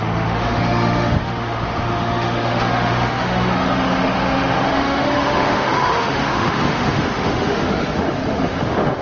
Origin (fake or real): fake